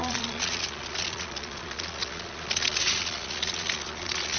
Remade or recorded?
remade